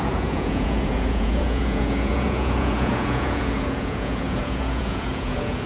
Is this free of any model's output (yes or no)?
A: no